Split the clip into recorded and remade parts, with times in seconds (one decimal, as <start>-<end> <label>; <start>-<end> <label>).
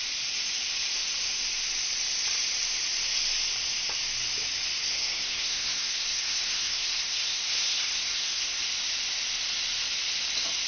0.0-4.8 recorded; 4.8-8.6 remade; 8.6-10.7 recorded